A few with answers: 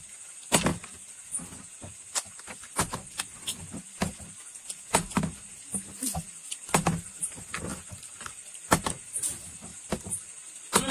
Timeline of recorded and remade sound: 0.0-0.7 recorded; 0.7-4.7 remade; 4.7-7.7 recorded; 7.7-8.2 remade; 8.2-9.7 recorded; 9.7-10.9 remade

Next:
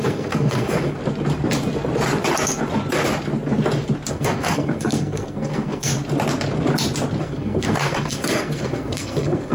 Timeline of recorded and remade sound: 0.0-1.0 remade; 1.0-4.1 recorded; 4.1-5.9 remade; 5.9-7.2 recorded; 7.2-9.5 remade

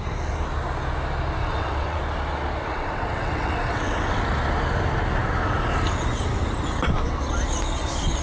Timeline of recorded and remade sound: 0.0-1.4 recorded; 1.4-2.0 remade; 2.0-2.6 recorded; 2.6-4.2 remade; 4.2-8.2 recorded

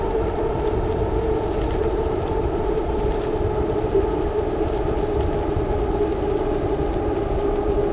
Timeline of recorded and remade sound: 0.0-1.8 recorded; 1.8-3.2 remade; 3.2-7.9 recorded

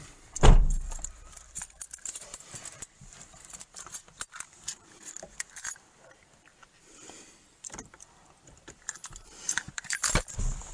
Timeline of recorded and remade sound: 0.0-10.7 remade

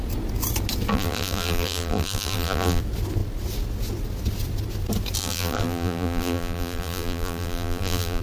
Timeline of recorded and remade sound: 0.0-0.9 recorded; 0.9-2.8 remade; 2.8-5.2 recorded; 5.2-8.2 remade